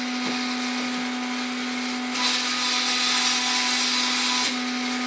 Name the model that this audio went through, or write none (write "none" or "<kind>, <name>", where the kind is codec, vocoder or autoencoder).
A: none